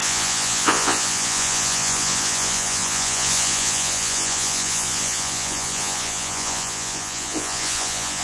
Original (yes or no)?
no